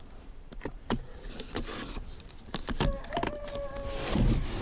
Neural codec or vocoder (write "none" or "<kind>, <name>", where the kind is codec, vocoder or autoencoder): none